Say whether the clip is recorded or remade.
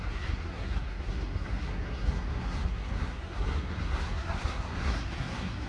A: remade